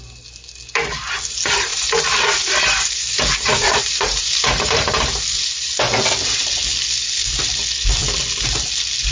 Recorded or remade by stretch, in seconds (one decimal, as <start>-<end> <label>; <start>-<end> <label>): 0.0-1.7 recorded; 1.7-5.7 remade; 5.7-9.1 recorded